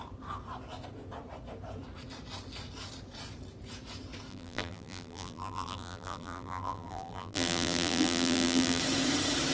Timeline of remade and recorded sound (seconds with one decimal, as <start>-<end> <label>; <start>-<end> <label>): 0.0-4.3 recorded; 4.3-8.8 remade; 8.8-9.5 recorded